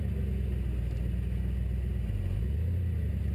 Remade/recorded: recorded